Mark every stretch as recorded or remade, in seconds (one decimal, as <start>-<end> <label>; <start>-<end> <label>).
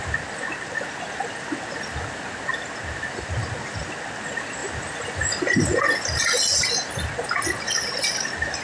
0.0-8.6 recorded